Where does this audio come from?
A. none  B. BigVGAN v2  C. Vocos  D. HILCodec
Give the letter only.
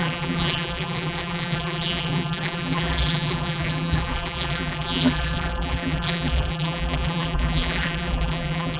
B